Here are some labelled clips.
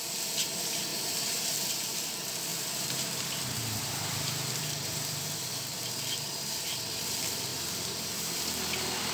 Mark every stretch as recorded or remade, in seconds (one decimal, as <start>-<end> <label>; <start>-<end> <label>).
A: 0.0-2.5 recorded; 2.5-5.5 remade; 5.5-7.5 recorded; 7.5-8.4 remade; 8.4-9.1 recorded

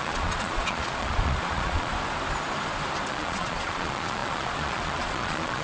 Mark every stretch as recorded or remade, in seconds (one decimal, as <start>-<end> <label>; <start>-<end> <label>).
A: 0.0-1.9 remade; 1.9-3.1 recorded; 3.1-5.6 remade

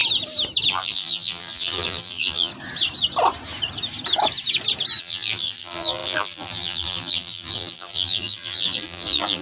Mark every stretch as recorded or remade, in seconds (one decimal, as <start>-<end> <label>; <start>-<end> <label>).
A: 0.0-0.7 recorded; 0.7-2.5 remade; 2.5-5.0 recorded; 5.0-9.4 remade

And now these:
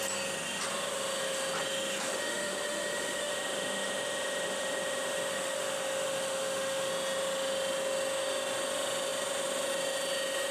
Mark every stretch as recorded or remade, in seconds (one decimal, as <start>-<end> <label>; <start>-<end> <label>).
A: 0.0-2.1 recorded; 2.1-3.3 remade; 3.3-5.3 recorded; 5.3-6.9 remade; 6.9-10.5 recorded